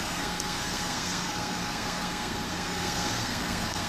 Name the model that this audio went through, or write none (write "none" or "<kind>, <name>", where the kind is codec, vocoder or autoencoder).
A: codec, SNAC